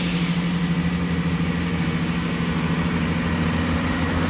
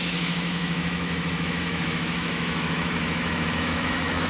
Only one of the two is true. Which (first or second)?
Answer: first